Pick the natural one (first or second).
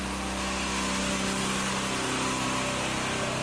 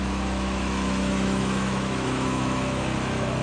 first